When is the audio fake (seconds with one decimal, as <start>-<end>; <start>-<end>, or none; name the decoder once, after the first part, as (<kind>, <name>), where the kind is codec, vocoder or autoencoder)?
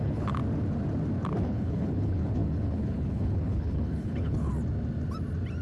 0.0-0.4 (codec, HILCodec); 1.4-4.5